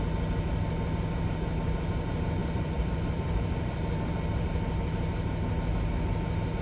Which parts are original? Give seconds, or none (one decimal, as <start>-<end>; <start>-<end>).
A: 0.0-2.4; 4.1-6.6